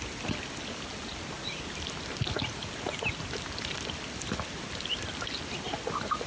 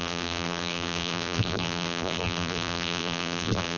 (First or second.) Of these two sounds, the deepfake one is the second